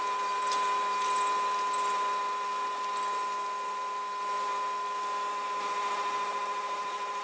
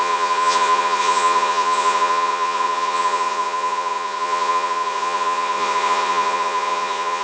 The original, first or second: first